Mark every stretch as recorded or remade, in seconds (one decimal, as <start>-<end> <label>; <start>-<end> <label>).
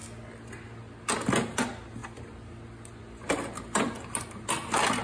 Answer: 0.0-5.0 recorded